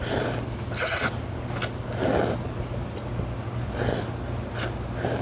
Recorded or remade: recorded